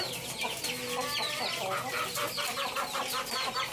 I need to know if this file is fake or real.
real